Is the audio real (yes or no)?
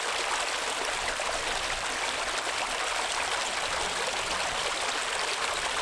yes